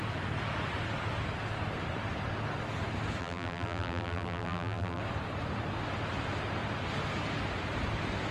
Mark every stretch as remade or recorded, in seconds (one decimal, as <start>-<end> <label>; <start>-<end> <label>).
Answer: 0.0-3.2 recorded; 3.2-5.0 remade; 5.0-8.3 recorded